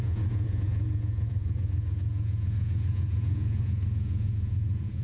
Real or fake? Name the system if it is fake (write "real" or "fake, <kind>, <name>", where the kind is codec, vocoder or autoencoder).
fake, vocoder, Vocos